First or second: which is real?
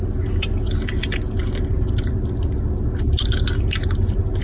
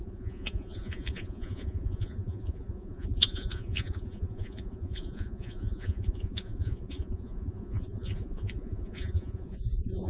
first